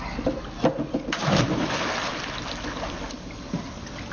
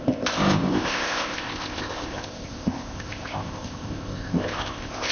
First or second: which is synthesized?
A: second